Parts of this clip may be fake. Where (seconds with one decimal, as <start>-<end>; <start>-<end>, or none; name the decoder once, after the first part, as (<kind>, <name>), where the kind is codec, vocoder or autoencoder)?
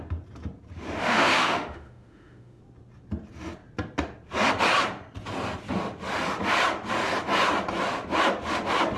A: 1.0-2.6 (autoencoder, DAC-VAE)